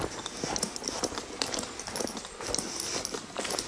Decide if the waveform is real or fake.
real